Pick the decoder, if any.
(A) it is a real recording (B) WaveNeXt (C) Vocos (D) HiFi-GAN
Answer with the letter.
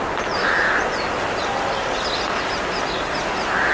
A